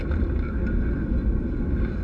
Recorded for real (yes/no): yes